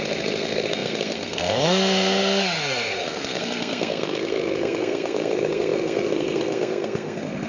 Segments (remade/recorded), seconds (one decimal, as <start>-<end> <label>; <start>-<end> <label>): 0.0-7.5 remade